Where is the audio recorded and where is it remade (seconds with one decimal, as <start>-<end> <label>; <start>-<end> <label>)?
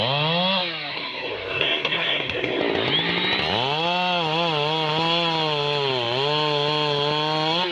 0.0-0.9 recorded; 0.9-2.6 remade; 2.6-7.7 recorded